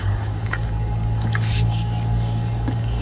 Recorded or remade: remade